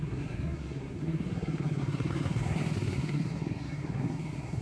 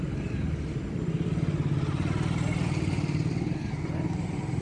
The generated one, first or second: first